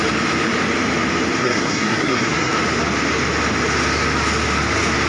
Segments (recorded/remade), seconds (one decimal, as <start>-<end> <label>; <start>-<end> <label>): 0.0-1.4 recorded; 1.4-2.5 remade; 2.5-5.1 recorded